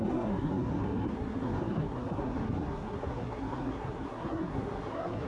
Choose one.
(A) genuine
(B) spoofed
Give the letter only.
B